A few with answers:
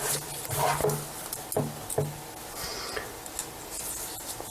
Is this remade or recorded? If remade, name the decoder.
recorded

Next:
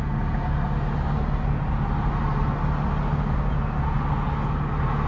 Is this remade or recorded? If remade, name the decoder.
recorded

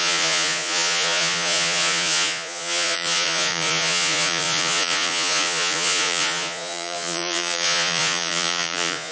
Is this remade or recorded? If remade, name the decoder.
remade, vocoder, Vocos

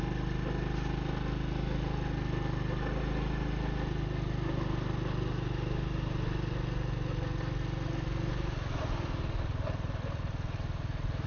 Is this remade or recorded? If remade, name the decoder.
recorded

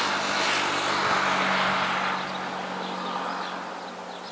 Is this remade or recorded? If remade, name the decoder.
recorded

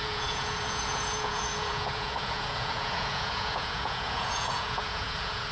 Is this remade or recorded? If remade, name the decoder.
remade, vocoder, Vocos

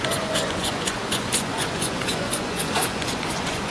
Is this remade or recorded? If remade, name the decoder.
remade, vocoder, Vocos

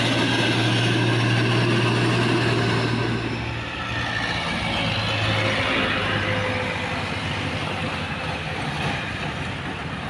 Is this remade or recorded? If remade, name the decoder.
recorded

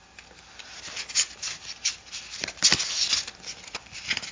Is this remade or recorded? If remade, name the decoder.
recorded